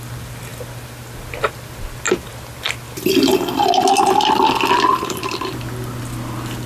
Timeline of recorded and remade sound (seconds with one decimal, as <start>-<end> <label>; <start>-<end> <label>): 0.0-4.9 recorded; 4.9-5.6 remade; 5.6-6.7 recorded